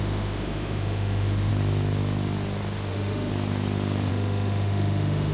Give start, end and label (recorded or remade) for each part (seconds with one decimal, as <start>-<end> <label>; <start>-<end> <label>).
0.0-1.5 remade; 1.5-2.9 recorded; 2.9-3.3 remade; 3.3-4.1 recorded; 4.1-5.3 remade